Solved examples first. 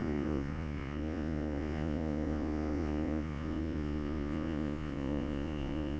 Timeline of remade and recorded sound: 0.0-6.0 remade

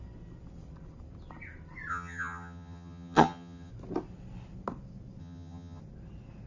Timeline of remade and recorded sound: 0.0-1.9 recorded; 1.9-3.7 remade; 3.7-5.2 recorded; 5.2-5.8 remade; 5.8-6.5 recorded

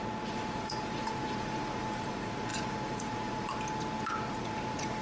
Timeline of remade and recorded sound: 0.0-3.5 remade; 3.5-4.3 recorded; 4.3-5.0 remade

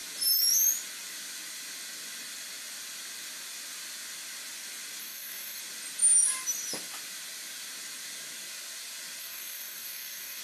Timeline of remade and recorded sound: 0.0-5.0 recorded; 5.0-5.6 remade; 5.6-9.2 recorded; 9.2-10.4 remade

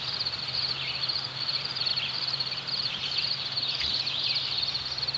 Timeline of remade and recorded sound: 0.0-5.2 remade

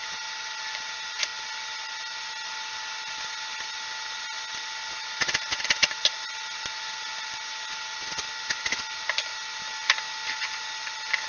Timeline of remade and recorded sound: 0.0-11.3 recorded